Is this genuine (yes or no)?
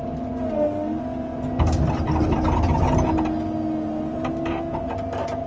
yes